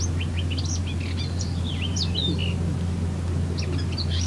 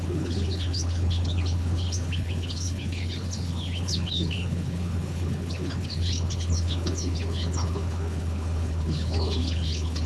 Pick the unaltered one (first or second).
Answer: first